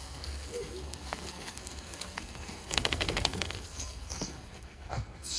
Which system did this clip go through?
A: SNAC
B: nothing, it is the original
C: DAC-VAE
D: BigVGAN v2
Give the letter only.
A